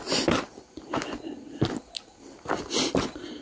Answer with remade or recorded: recorded